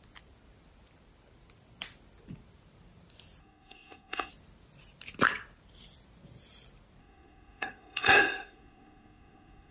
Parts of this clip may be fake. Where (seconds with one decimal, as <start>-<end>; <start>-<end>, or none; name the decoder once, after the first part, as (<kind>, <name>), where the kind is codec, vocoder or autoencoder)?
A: 3.4-4.3 (codec, SNAC); 7.0-9.7